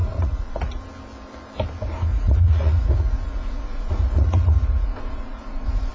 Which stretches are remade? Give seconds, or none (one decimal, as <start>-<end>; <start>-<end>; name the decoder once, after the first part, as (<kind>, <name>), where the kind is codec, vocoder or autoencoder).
0.0-0.8 (vocoder, Vocos); 2.1-5.9